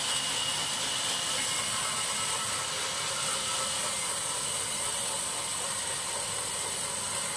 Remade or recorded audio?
recorded